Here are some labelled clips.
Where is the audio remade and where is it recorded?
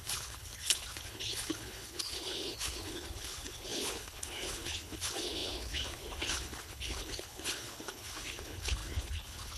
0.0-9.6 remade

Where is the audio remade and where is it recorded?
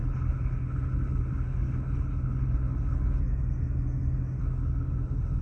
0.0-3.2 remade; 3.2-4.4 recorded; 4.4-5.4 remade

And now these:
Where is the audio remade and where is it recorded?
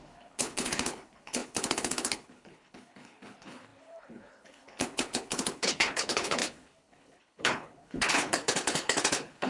0.0-9.5 remade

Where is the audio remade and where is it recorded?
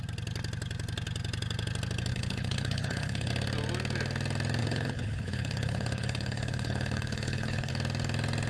0.0-2.1 recorded; 2.1-3.3 remade; 3.3-4.6 recorded; 4.6-7.7 remade; 7.7-8.5 recorded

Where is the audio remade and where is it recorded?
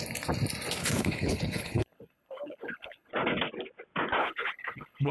0.0-0.8 recorded; 0.8-3.1 remade; 3.1-4.2 recorded; 4.2-5.1 remade